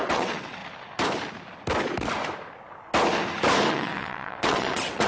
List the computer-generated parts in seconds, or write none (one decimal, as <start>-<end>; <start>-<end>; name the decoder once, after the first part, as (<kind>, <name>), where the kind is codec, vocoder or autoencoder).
0.0-0.6 (vocoder, WaveNeXt); 3.7-5.1